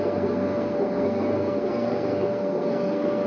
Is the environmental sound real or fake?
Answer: fake